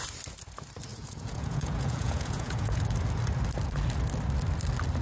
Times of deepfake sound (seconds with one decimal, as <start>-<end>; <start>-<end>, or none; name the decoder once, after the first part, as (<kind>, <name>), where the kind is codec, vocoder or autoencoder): 0.9-2.8 (vocoder, Vocos)

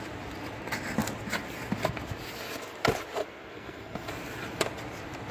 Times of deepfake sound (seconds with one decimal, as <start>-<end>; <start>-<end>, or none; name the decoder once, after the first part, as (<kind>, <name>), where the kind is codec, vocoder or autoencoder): 3.2-4.1 (codec, SNAC)

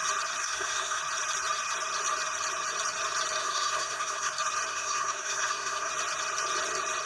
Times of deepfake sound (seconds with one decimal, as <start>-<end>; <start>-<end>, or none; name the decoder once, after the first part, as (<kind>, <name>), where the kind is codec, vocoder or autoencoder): 0.4-1.0 (codec, SNAC); 3.4-4.3; 4.7-5.9

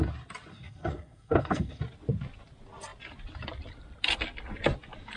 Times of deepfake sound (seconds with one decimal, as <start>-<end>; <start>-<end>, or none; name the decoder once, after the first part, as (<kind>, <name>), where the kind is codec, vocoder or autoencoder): 0.5-1.8 (codec, SNAC)

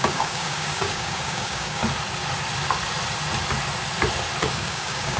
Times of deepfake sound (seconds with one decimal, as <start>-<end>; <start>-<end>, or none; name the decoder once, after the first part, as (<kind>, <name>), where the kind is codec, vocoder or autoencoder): 0.0-1.8 (codec, DAC); 4.4-5.2

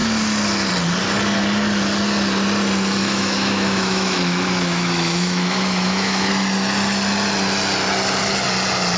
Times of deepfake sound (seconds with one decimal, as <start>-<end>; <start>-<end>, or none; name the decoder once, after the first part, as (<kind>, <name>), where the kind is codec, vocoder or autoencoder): 3.0-6.3 (autoencoder, DAC-VAE)